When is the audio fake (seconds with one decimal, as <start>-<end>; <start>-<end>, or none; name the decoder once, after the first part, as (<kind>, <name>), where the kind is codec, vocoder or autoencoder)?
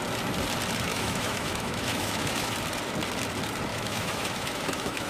0.9-2.5 (autoencoder, DAC-VAE); 3.7-5.1